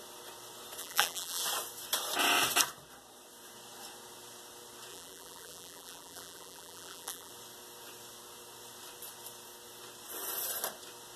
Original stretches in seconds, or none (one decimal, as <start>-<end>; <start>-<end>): 0.0-0.8; 1.4-4.9; 7.3-11.2